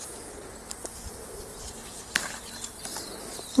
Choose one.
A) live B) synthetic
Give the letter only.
A